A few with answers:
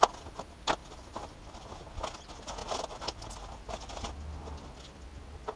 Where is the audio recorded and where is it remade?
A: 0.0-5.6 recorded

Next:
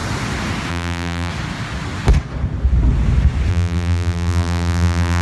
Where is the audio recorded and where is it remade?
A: 0.0-0.7 recorded; 0.7-1.3 remade; 1.3-3.5 recorded; 3.5-5.2 remade

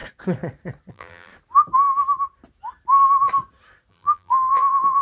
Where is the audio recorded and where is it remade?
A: 0.0-0.9 recorded; 0.9-1.3 remade; 1.3-3.9 recorded; 3.9-5.0 remade

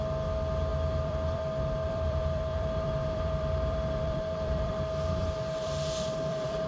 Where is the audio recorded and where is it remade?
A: 0.0-0.7 recorded; 0.7-4.7 remade; 4.7-5.2 recorded; 5.2-6.7 remade

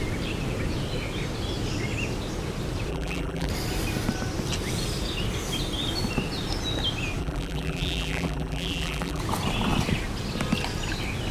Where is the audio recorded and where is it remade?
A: 0.0-2.9 recorded; 2.9-3.5 remade; 3.5-7.2 recorded; 7.2-9.2 remade; 9.2-11.3 recorded

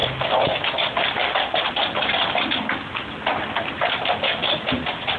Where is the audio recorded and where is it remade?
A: 0.0-5.2 recorded